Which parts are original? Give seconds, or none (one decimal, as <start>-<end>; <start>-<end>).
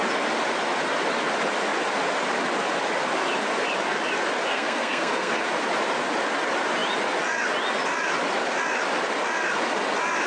0.0-4.5; 5.4-10.3